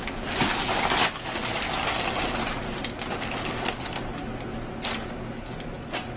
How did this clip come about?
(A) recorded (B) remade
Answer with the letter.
A